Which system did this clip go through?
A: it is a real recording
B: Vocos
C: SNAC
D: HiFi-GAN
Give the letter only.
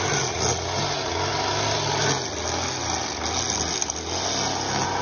A